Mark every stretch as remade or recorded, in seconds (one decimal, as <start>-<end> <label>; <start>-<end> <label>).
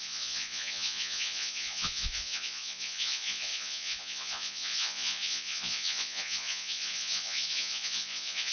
0.0-8.5 remade